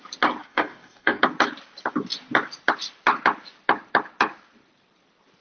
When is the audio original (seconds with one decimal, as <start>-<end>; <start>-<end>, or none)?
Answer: 0.0-0.4; 1.2-5.4

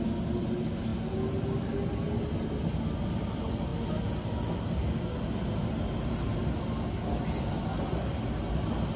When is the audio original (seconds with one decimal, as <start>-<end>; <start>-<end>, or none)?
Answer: 0.0-9.0

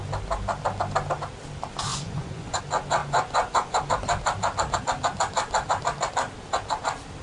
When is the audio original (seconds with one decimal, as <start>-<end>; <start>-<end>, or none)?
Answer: 0.0-1.9; 2.6-3.0; 3.9-7.2

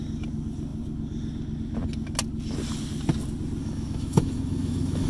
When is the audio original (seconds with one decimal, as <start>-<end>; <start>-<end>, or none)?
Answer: 0.0-3.6